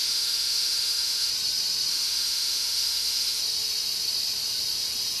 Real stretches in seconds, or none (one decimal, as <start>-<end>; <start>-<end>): 1.3-1.9; 3.4-5.2